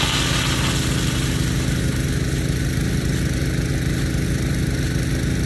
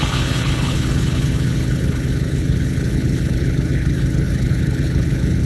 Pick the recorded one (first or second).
first